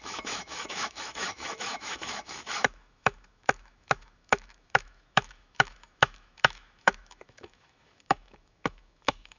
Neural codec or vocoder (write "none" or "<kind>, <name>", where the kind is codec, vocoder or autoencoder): autoencoder, DAC-VAE